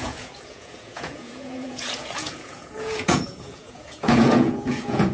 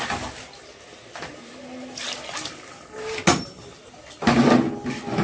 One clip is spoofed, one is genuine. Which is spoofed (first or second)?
first